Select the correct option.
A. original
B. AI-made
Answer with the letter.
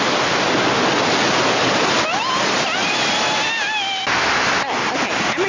A